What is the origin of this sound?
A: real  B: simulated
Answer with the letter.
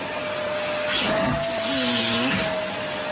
A